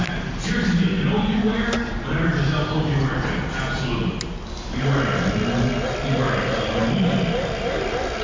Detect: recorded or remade recorded